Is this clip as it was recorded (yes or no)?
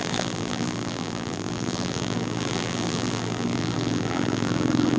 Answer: no